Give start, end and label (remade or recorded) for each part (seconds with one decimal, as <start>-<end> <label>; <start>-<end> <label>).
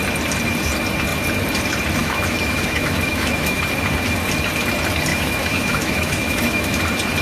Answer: 0.0-2.0 recorded; 2.0-3.6 remade; 3.6-5.1 recorded; 5.1-6.8 remade; 6.8-7.2 recorded